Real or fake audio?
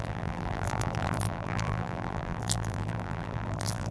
fake